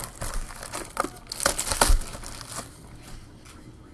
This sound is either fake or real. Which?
real